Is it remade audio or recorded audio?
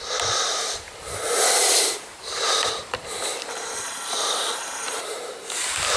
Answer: remade